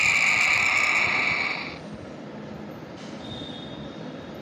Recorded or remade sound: recorded